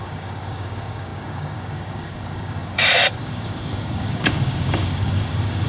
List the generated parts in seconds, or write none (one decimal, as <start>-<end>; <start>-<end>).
0.0-5.7